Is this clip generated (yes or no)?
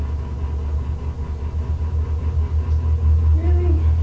no